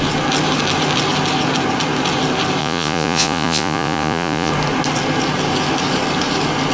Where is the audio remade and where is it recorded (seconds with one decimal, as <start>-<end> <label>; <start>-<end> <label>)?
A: 0.0-2.6 recorded; 2.6-4.5 remade; 4.5-6.7 recorded